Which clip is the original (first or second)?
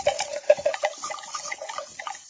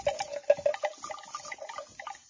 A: second